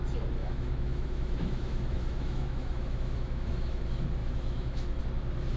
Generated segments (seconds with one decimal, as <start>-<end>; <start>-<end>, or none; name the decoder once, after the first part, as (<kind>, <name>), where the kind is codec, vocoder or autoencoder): 0.4-3.8 (autoencoder, DAC-VAE); 4.2-5.0

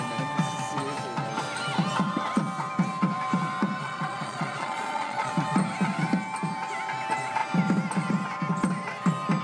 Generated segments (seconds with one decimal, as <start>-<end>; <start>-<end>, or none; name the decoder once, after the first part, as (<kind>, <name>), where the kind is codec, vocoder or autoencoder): 3.8-5.3 (vocoder, Vocos)

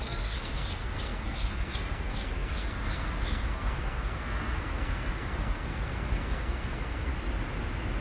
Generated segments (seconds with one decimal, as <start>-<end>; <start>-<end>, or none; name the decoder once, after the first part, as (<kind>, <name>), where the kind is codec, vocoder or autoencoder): 0.0-7.1 (codec, SNAC)

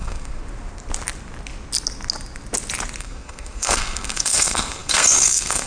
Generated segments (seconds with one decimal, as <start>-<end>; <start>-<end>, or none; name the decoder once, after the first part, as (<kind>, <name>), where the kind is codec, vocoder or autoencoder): 0.0-0.4 (codec, SNAC); 3.0-5.7